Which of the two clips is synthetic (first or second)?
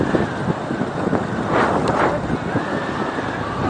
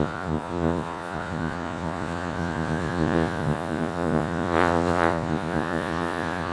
second